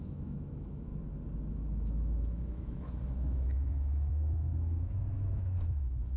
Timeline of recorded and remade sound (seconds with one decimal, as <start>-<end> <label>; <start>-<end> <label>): 0.0-0.9 remade; 0.9-1.5 recorded; 1.5-6.2 remade